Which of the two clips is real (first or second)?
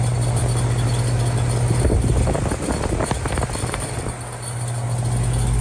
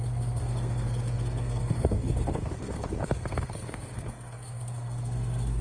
first